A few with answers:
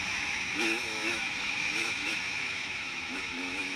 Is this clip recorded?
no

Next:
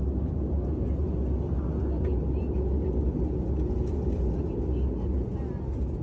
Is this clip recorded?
yes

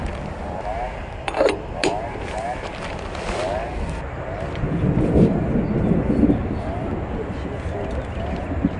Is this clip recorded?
yes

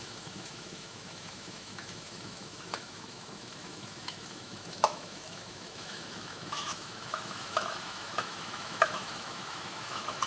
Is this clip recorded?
no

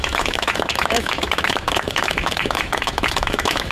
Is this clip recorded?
no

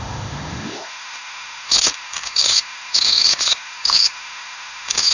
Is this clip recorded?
no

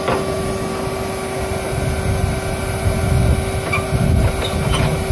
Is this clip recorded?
yes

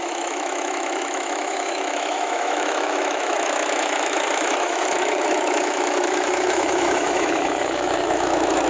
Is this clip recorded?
no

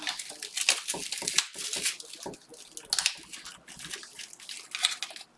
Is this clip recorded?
yes